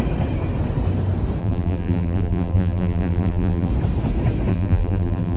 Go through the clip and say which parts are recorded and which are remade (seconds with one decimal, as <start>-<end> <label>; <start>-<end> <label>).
0.0-1.4 recorded; 1.4-3.7 remade; 3.7-4.5 recorded; 4.5-5.4 remade